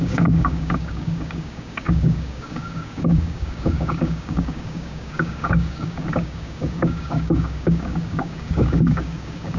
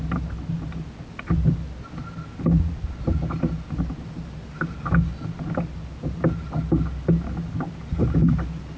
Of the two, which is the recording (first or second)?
second